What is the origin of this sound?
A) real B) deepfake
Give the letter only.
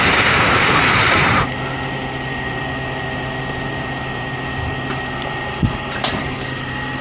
B